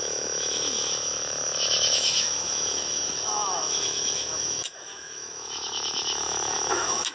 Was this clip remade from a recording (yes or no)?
yes